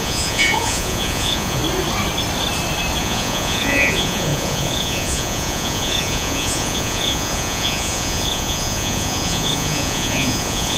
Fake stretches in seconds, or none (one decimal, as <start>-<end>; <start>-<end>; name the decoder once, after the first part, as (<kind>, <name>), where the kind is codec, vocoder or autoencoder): 0.0-1.6 (vocoder, Vocos); 3.0-10.8